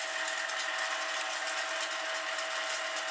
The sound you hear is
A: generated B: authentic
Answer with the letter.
B